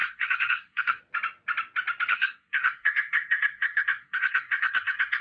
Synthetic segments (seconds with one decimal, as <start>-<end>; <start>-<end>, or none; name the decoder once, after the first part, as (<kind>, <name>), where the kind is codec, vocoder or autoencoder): 0.0-1.0 (codec, SNAC); 2.1-5.2